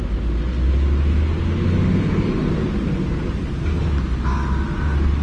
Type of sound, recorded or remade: recorded